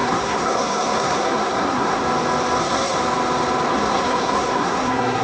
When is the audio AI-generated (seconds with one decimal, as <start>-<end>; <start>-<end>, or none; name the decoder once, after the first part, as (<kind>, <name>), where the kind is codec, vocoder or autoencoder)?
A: 0.0-2.0 (codec, SNAC); 2.6-3.0; 3.7-5.2